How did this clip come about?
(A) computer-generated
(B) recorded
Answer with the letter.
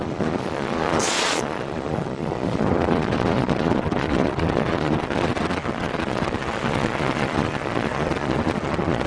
A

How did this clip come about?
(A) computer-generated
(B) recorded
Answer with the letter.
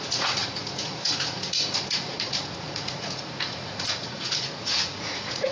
A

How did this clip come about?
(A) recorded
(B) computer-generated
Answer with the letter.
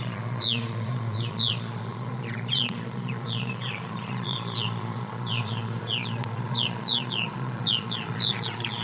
B